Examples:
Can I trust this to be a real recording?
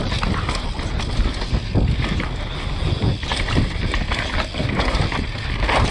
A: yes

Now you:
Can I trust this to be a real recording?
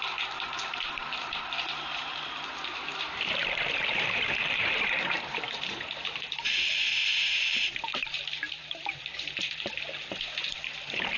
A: no